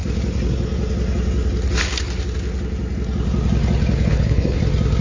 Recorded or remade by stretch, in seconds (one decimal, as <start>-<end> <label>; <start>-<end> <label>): 0.0-4.1 recorded; 4.1-4.6 remade; 4.6-5.0 recorded